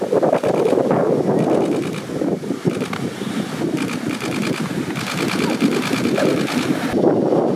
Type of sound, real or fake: real